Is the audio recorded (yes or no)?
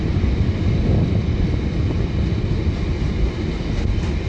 yes